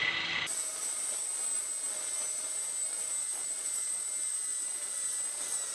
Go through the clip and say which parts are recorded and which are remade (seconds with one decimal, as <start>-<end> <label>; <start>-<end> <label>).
0.0-5.7 recorded